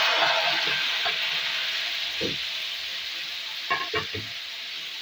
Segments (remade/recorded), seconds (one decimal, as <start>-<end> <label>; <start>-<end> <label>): 0.0-2.9 recorded; 2.9-3.6 remade; 3.6-5.0 recorded